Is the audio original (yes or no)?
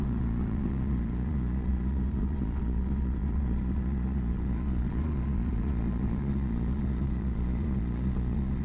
no